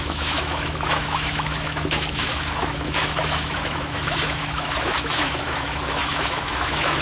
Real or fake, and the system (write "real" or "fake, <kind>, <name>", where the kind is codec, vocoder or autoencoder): fake, autoencoder, DAC-VAE